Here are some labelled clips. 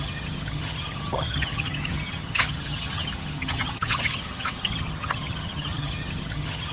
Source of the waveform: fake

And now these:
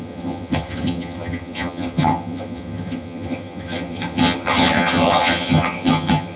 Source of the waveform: fake